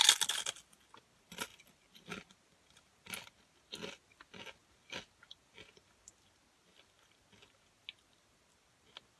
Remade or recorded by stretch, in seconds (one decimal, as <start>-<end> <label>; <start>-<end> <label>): 0.0-9.2 recorded